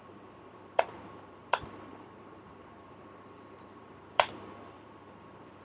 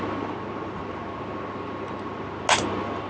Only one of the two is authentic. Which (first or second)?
second